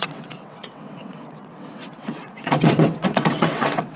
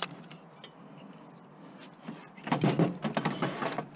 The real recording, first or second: second